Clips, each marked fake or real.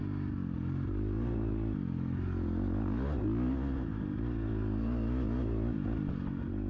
real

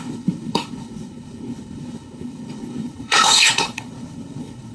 fake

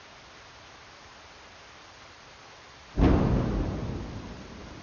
real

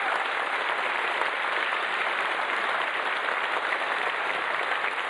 real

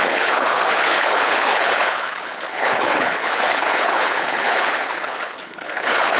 fake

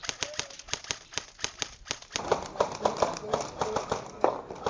real